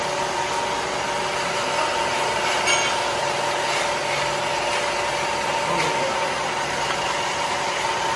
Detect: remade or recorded recorded